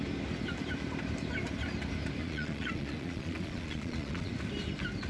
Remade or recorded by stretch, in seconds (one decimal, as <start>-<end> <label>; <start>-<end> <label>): 0.0-2.2 recorded; 2.2-4.3 remade; 4.3-5.1 recorded